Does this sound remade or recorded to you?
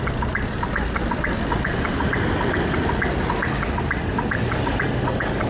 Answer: recorded